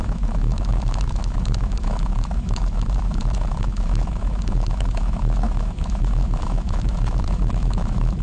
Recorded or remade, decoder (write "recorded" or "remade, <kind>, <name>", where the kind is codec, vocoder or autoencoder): remade, autoencoder, DAC-VAE